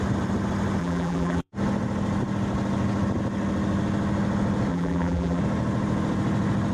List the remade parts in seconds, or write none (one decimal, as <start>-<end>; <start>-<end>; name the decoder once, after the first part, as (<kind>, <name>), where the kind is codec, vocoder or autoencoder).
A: 0.8-1.5 (vocoder, BigVGAN v2); 4.7-5.4